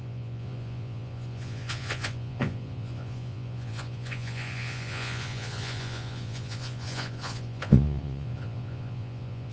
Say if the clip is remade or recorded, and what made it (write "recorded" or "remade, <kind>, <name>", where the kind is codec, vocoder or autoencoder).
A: remade, vocoder, Vocos